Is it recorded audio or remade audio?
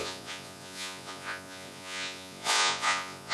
remade